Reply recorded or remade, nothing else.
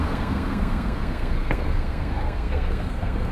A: remade